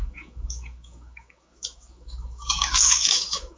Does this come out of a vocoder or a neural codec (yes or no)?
yes